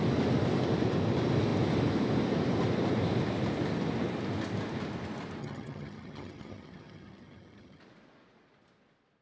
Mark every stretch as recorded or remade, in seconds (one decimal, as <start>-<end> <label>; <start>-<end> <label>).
0.0-5.4 recorded; 5.4-7.8 remade; 7.8-9.2 recorded